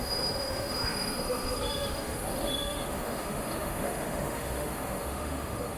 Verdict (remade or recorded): remade